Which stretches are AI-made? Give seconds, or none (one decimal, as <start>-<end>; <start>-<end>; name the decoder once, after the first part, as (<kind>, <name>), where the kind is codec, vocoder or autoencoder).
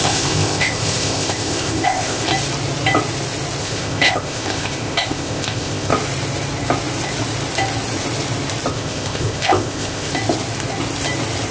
0.0-2.3 (codec, ZipCodec); 3.6-5.9; 8.7-10.1